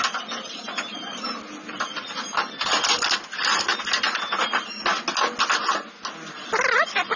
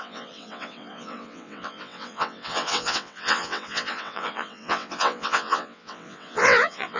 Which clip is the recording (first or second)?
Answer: first